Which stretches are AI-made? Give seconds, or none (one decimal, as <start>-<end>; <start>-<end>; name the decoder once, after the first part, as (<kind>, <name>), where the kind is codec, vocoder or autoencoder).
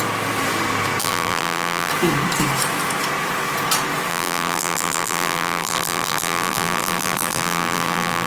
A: 1.0-1.9 (vocoder, BigVGAN v2); 4.1-8.3